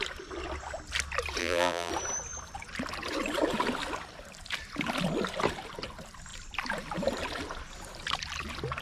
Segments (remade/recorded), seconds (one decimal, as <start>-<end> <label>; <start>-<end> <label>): 0.0-1.4 recorded; 1.4-1.9 remade; 1.9-8.8 recorded